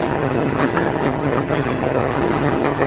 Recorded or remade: remade